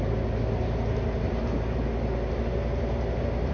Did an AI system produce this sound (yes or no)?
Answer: no